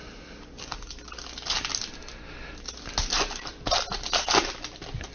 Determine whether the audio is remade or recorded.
recorded